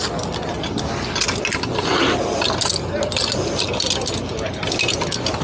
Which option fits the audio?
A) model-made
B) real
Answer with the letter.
B